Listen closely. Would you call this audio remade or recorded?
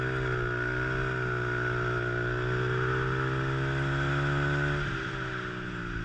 recorded